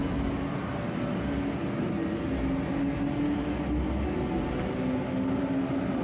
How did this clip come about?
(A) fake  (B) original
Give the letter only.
B